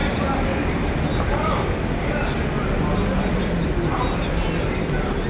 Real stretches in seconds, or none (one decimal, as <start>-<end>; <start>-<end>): 0.0-5.3